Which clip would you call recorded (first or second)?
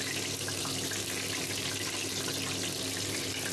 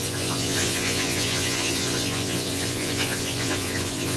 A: first